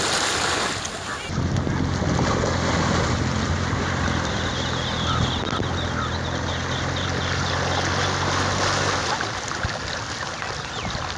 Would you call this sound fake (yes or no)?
no